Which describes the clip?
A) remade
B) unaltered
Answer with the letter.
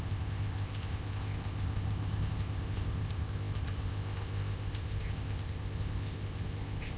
A